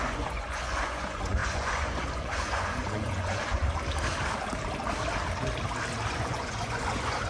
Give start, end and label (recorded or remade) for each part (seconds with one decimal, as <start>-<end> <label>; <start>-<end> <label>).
0.0-3.6 remade; 3.6-6.1 recorded; 6.1-7.3 remade